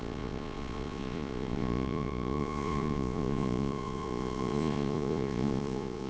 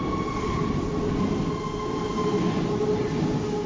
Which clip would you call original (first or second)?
second